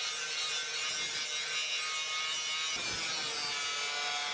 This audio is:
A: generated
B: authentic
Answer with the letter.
B